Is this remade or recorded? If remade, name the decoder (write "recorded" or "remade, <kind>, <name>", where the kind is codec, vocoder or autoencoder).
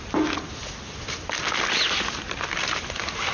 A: recorded